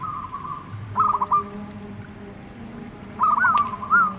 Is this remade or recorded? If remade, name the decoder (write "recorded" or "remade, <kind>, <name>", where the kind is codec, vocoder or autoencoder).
recorded